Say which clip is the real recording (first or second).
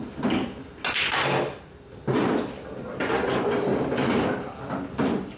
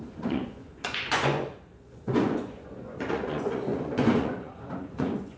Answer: first